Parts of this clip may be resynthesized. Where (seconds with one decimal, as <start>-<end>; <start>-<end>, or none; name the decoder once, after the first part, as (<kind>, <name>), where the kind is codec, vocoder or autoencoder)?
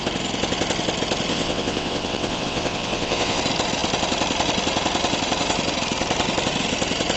1.3-3.4 (vocoder, WaveNeXt)